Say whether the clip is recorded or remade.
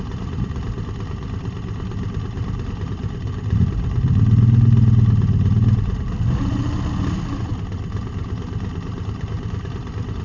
recorded